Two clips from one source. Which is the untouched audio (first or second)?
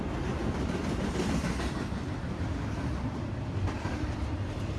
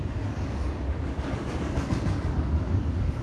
first